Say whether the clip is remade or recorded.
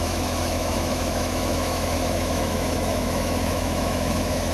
remade